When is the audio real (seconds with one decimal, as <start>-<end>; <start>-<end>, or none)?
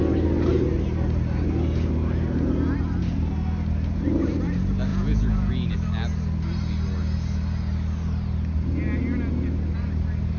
0.0-4.9; 5.5-10.4